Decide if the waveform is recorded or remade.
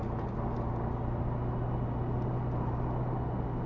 recorded